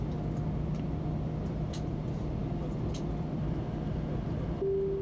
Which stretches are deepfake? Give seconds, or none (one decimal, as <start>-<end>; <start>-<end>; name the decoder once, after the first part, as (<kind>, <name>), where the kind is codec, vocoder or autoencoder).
none